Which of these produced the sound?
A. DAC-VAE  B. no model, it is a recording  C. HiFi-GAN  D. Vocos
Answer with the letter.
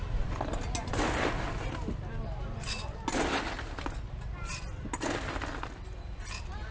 B